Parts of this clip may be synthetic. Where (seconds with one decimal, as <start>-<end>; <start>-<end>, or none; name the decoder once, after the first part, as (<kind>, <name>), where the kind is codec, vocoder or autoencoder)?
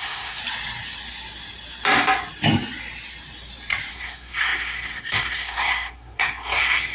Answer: 0.0-0.4 (codec, SNAC); 3.9-6.9